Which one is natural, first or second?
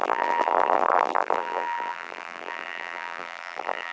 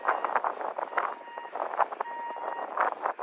second